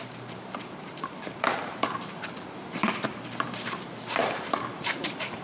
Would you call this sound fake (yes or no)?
yes